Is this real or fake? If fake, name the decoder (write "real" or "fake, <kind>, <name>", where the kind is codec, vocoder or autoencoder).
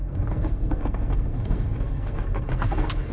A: fake, codec, SNAC